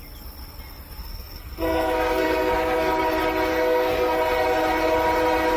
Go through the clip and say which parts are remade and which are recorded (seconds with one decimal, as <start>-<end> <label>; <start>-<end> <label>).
0.0-1.0 recorded; 1.0-3.0 remade; 3.0-3.5 recorded; 3.5-4.2 remade; 4.2-5.6 recorded